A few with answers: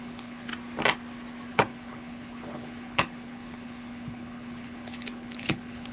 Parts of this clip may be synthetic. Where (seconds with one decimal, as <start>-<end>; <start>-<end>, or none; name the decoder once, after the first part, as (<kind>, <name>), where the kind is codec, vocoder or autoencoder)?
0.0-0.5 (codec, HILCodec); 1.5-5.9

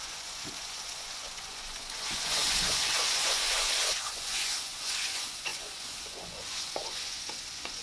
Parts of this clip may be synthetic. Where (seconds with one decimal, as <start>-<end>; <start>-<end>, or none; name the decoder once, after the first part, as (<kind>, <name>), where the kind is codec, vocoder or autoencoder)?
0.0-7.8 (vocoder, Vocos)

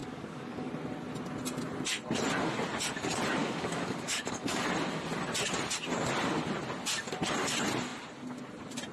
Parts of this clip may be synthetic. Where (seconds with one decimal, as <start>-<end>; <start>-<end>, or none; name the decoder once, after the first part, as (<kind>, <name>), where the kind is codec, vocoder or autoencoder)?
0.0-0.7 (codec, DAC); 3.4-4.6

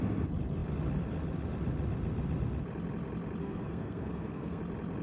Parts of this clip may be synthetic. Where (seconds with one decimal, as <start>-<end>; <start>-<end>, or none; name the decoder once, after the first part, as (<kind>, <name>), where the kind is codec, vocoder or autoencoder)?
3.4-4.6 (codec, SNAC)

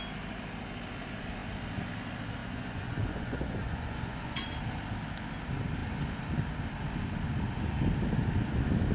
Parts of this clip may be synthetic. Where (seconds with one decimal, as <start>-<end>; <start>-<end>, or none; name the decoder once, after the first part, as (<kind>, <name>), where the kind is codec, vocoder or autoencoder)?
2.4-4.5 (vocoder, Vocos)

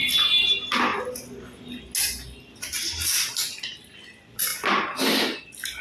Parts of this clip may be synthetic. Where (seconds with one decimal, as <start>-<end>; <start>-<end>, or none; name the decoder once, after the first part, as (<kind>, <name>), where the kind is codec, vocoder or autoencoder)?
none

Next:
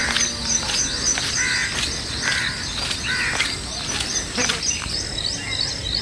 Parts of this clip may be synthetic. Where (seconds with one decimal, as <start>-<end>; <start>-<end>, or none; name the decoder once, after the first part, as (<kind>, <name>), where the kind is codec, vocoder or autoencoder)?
1.6-4.6 (vocoder, BigVGAN v2)